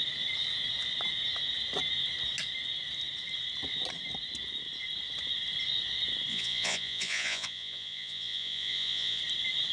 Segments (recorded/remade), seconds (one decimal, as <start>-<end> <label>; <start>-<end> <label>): 0.0-6.3 recorded; 6.3-9.2 remade; 9.2-9.7 recorded